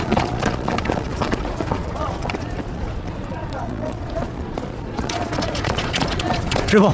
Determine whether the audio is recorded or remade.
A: remade